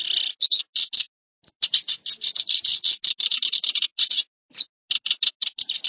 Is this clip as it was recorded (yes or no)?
yes